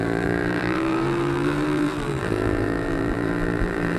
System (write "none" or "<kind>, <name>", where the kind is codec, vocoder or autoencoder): vocoder, BigVGAN v2